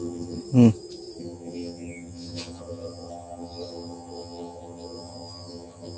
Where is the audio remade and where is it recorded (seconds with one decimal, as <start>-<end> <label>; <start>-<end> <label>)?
0.0-0.4 remade; 0.4-1.2 recorded; 1.2-6.0 remade